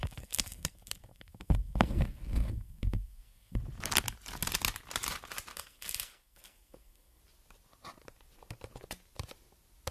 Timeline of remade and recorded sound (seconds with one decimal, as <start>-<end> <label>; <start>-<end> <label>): 0.0-3.6 remade; 3.6-5.5 recorded; 5.5-7.2 remade; 7.2-9.9 recorded